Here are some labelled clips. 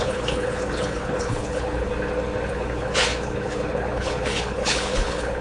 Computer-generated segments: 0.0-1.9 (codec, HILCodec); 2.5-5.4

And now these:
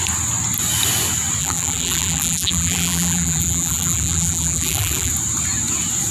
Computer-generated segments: 1.4-5.1 (vocoder, BigVGAN v2)